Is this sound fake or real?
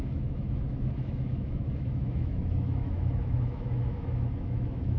fake